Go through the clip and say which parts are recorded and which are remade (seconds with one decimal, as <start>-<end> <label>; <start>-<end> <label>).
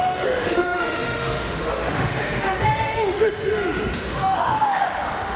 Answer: 0.0-5.4 remade